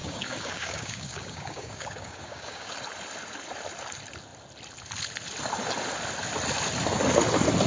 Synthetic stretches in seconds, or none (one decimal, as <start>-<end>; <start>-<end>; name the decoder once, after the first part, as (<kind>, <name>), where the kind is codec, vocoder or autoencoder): 0.0-2.7 (codec, DAC)